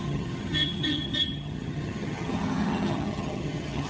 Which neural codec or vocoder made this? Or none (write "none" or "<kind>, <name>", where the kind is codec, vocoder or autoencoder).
vocoder, HiFi-GAN